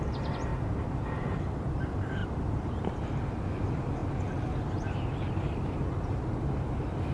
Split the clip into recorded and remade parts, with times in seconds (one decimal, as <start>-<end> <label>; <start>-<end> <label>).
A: 0.0-0.5 recorded; 0.5-1.4 remade; 1.4-2.2 recorded; 2.2-3.2 remade; 3.2-7.1 recorded